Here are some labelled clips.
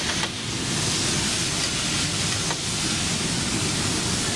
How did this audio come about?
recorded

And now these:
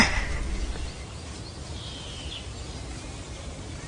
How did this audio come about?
recorded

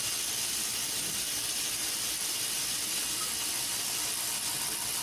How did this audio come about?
recorded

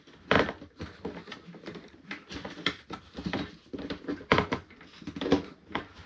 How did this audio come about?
recorded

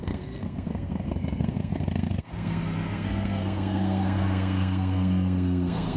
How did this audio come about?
remade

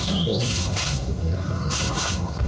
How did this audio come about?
remade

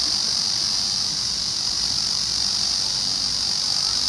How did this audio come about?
recorded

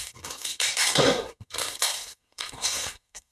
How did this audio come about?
remade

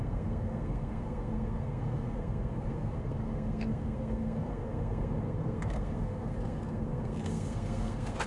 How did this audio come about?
remade